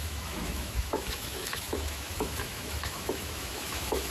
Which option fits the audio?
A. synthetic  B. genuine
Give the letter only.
A